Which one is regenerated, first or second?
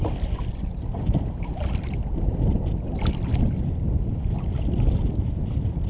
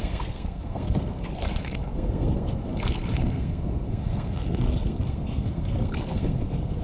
second